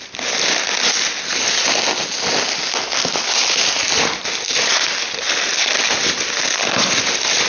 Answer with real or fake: real